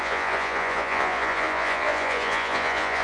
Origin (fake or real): fake